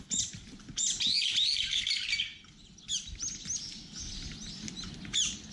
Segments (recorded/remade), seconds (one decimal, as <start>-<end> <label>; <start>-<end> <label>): 0.0-5.5 recorded